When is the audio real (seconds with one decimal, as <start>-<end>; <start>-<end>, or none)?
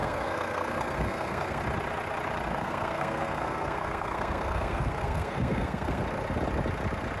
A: 1.6-2.5; 6.0-7.2